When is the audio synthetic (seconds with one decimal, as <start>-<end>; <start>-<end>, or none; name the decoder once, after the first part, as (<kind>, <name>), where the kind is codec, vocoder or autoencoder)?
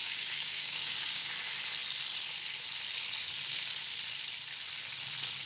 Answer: 0.0-1.3 (codec, DAC)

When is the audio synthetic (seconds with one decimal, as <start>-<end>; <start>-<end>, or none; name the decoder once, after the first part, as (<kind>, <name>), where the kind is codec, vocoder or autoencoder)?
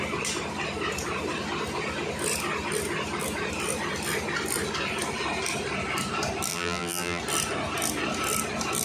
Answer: 6.5-7.2 (vocoder, BigVGAN v2)